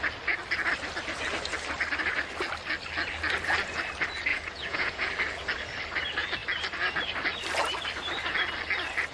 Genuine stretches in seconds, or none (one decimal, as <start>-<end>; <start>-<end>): 0.0-4.3; 5.1-9.1